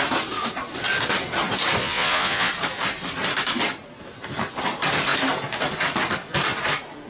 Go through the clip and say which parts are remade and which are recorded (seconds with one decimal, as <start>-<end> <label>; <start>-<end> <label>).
0.0-1.8 recorded; 1.8-2.5 remade; 2.5-7.1 recorded